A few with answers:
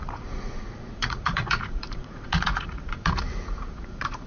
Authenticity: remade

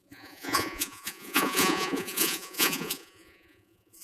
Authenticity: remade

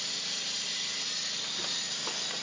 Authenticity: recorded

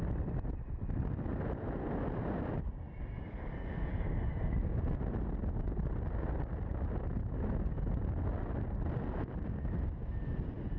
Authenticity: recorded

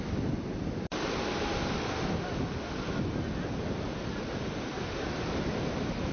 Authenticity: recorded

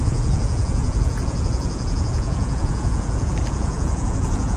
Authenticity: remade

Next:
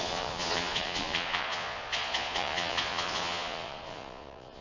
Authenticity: remade